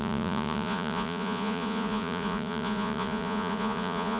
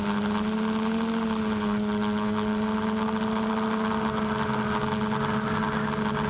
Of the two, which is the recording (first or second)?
second